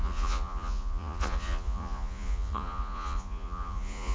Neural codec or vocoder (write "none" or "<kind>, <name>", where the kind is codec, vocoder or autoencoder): vocoder, Vocos